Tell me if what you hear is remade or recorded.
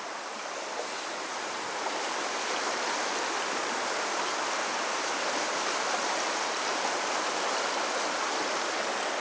recorded